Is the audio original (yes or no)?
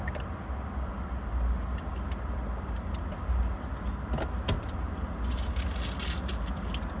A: yes